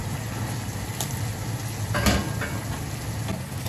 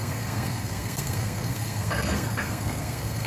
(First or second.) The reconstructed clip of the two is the second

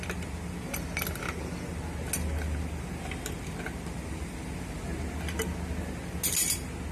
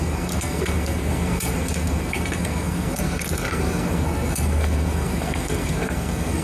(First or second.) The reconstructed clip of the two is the second